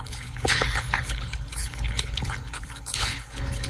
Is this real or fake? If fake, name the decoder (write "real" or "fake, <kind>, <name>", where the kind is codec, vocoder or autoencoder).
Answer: fake, codec, HILCodec